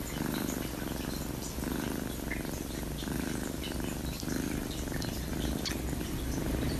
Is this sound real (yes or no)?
yes